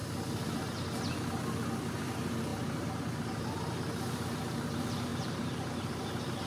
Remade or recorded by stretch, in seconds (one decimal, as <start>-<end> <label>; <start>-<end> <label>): 0.0-2.5 recorded; 2.5-3.4 remade; 3.4-5.1 recorded; 5.1-6.1 remade; 6.1-6.5 recorded